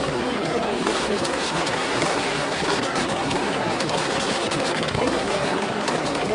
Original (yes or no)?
no